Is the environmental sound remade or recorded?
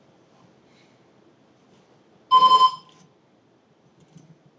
recorded